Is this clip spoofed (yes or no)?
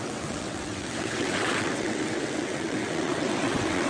yes